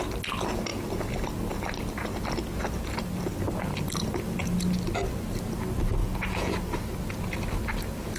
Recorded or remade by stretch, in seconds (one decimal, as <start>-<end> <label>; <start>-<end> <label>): 0.0-6.0 recorded; 6.0-6.5 remade; 6.5-8.2 recorded